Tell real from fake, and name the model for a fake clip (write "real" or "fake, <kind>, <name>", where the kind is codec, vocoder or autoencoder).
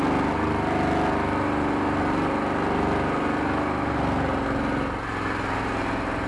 real